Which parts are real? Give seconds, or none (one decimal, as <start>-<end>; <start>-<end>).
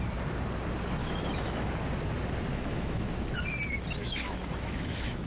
0.0-1.0; 1.7-2.5; 3.1-4.0